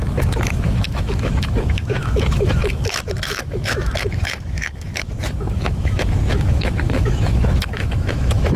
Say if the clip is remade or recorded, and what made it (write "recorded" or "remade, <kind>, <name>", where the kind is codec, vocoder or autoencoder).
remade, autoencoder, DAC-VAE